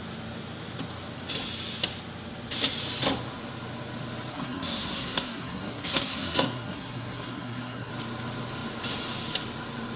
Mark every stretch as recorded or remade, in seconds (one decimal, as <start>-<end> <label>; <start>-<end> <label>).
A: 0.0-4.3 recorded; 4.3-7.9 remade; 7.9-10.0 recorded